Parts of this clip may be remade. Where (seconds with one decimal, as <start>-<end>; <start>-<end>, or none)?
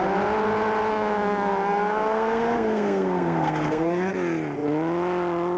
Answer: 0.9-4.1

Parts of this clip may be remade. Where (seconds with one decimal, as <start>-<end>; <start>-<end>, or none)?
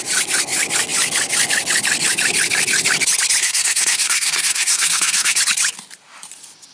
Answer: 3.4-5.4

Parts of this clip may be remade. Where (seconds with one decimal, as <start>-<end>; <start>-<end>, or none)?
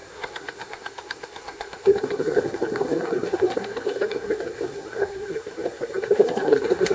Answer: 0.0-6.9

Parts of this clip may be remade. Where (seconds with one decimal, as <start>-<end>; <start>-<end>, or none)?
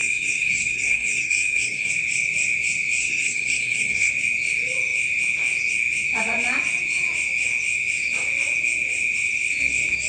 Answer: 0.0-1.9; 3.0-4.1